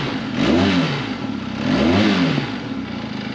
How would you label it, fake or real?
real